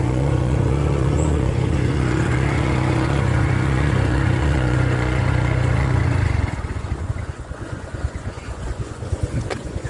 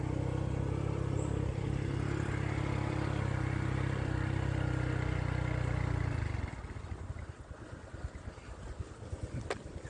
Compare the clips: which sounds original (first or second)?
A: second